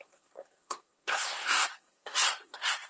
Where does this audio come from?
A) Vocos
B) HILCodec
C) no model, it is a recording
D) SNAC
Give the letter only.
D